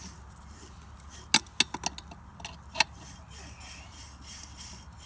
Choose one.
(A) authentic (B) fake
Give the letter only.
A